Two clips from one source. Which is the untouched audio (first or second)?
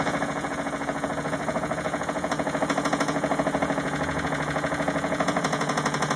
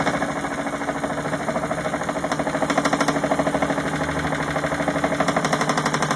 second